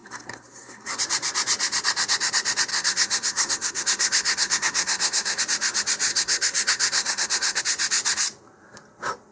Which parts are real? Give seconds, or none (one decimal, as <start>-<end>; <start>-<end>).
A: 1.0-2.7; 5.4-6.1; 7.6-9.3